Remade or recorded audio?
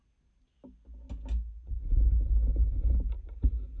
recorded